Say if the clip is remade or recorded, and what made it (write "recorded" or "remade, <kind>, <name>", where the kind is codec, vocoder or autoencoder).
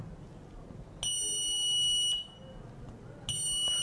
recorded